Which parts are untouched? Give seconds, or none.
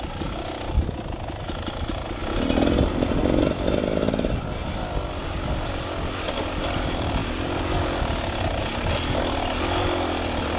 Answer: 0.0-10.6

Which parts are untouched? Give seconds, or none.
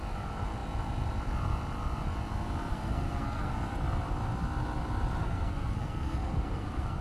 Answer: 0.0-2.7; 3.5-5.2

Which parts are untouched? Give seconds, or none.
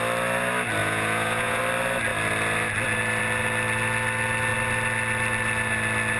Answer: 0.0-0.8; 1.6-6.2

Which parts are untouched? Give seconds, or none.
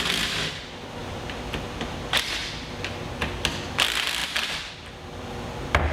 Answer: 0.0-1.0; 2.4-4.2; 4.7-5.9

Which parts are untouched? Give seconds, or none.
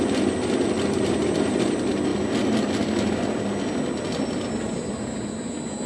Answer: 0.0-5.9